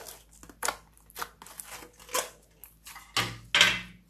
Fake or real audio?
real